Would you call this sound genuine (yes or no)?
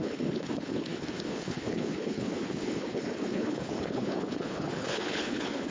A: no